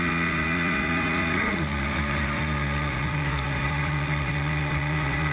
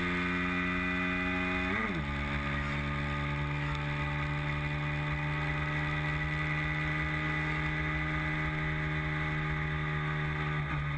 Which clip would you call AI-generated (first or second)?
first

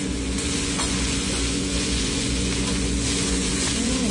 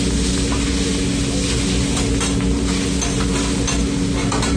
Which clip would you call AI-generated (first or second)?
first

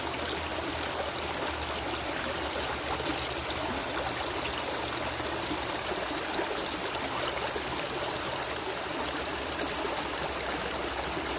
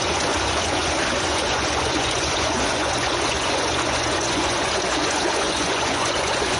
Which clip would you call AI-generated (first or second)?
second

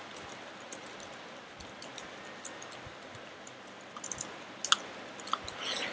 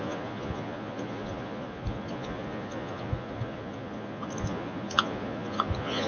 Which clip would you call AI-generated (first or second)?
second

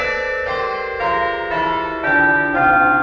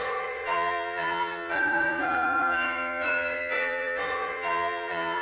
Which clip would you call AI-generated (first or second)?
second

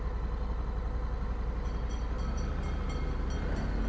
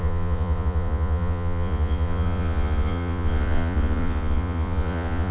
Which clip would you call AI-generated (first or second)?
second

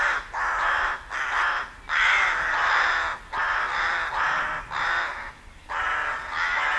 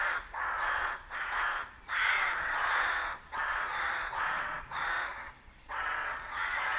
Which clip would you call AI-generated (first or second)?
second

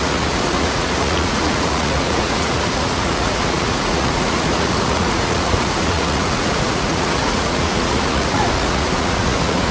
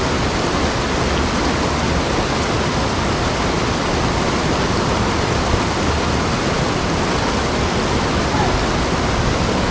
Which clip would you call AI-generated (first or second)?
first